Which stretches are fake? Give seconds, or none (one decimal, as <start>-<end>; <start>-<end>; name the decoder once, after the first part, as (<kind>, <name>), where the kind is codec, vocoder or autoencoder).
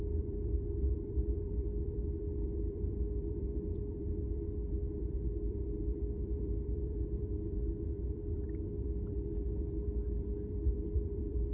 0.0-11.5 (vocoder, BigVGAN v2)